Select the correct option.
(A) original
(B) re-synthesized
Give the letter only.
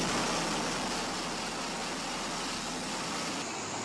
A